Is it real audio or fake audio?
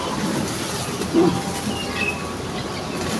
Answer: real